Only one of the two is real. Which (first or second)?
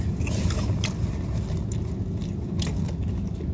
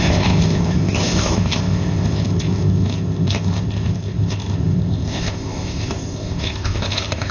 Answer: first